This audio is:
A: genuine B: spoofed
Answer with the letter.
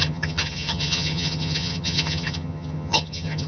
B